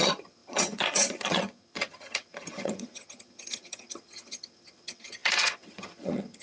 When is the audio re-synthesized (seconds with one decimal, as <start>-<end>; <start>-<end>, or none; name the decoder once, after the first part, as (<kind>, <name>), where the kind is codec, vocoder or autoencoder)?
0.0-6.4 (vocoder, HiFi-GAN)